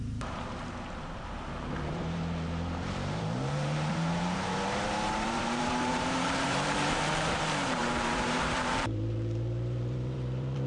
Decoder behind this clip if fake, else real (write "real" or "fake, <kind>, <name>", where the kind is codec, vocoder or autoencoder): fake, vocoder, BigVGAN v2